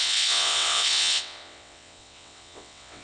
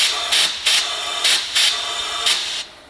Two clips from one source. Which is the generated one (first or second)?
first